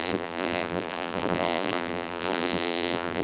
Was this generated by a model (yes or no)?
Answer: yes